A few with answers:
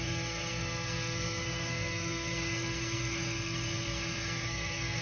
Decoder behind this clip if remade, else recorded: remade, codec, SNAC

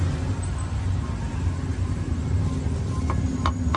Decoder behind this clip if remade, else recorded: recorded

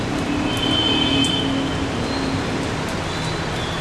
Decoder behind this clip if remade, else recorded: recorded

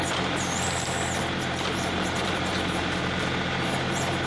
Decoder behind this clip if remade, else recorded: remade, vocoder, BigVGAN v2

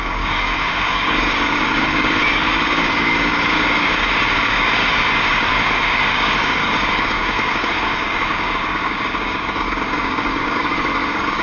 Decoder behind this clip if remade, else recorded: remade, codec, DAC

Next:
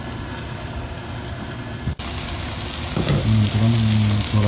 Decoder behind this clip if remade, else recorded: recorded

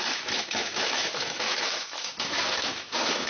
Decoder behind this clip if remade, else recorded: remade, autoencoder, DAC-VAE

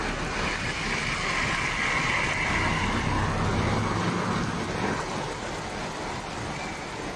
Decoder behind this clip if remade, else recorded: recorded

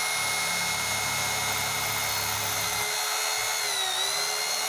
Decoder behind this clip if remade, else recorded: recorded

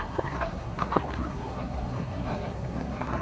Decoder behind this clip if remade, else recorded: remade, codec, SNAC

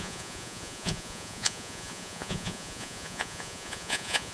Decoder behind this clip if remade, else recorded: remade, vocoder, Vocos